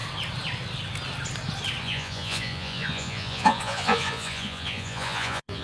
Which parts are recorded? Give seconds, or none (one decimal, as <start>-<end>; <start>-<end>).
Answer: 0.0-1.8